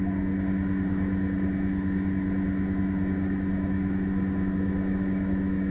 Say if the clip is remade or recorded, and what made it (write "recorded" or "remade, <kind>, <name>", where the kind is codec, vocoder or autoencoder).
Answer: remade, autoencoder, DAC-VAE